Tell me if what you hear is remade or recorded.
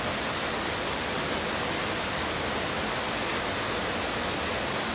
recorded